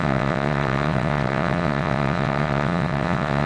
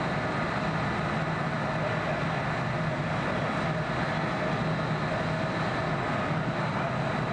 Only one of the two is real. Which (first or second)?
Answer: second